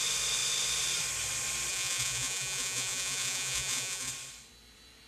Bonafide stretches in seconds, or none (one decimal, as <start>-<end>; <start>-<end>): 0.0-1.7; 4.1-5.1